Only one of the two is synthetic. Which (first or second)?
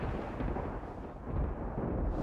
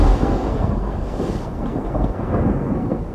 second